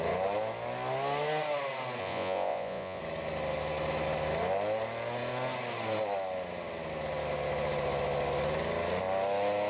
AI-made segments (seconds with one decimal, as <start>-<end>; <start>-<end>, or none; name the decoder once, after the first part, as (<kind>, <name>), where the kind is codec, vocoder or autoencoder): 2.0-3.0 (vocoder, Vocos)